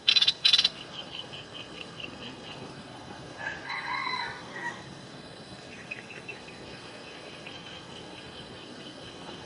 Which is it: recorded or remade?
remade